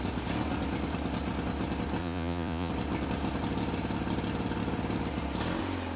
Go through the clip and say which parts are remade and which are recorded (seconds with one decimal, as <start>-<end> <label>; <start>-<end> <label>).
0.0-2.0 recorded; 2.0-2.7 remade; 2.7-6.0 recorded